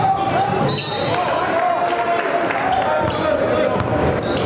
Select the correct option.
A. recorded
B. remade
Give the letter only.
A